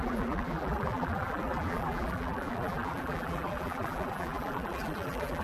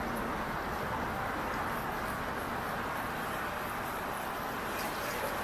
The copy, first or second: first